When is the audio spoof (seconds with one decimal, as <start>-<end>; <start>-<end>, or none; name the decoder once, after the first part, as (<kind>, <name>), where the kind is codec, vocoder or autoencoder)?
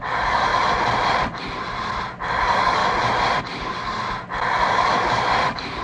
0.0-0.5 (codec, DAC); 2.3-2.8; 3.4-4.0; 4.7-5.8